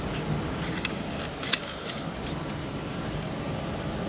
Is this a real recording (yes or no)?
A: yes